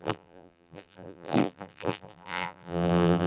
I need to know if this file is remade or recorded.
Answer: remade